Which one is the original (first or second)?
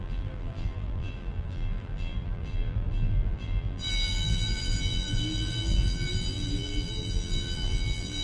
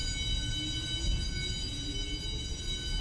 second